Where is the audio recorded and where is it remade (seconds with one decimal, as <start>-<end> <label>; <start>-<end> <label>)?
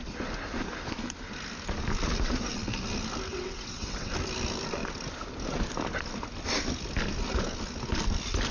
0.0-3.3 recorded; 3.3-4.1 remade; 4.1-8.5 recorded